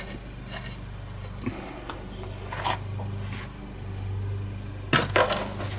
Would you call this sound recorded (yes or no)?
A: yes